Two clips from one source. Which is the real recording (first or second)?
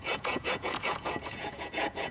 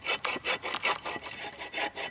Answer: second